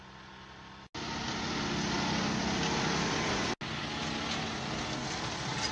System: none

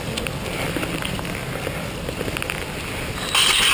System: none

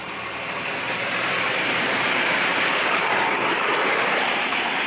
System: vocoder, BigVGAN v2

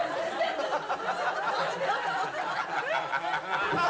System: none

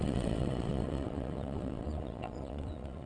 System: vocoder, WaveNeXt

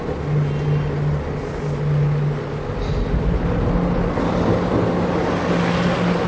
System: none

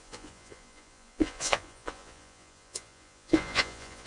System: vocoder, Vocos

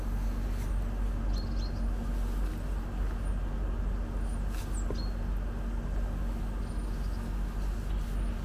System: none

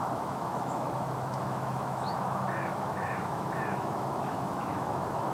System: autoencoder, DAC-VAE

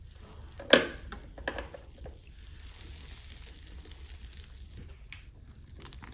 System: none